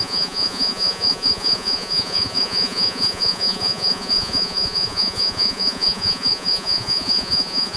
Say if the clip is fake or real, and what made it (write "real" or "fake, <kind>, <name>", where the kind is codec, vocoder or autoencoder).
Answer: fake, vocoder, Vocos